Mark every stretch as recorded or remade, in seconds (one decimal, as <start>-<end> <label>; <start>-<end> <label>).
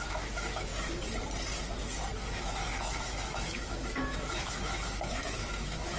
0.0-0.7 remade; 0.7-2.4 recorded; 2.4-6.0 remade